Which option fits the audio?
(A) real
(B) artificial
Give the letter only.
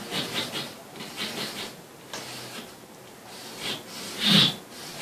A